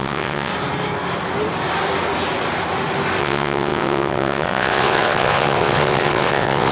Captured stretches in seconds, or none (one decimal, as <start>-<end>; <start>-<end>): 0.5-3.2